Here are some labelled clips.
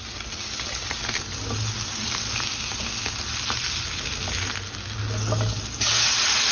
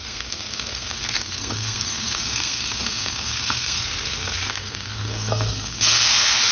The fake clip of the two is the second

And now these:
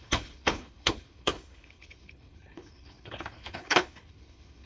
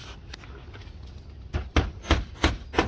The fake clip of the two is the first